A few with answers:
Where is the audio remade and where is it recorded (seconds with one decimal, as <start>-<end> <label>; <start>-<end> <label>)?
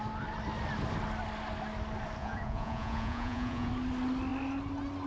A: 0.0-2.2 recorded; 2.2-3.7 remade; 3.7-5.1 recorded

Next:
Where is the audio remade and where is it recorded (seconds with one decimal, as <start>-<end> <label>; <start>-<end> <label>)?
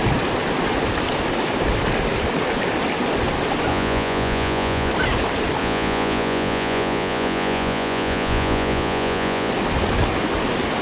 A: 0.0-3.7 recorded; 3.7-4.9 remade; 4.9-5.6 recorded; 5.6-9.5 remade; 9.5-10.8 recorded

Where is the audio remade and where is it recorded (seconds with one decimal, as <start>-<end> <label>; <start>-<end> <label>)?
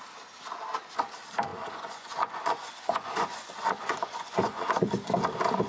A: 0.0-1.5 recorded; 1.5-4.9 remade; 4.9-5.7 recorded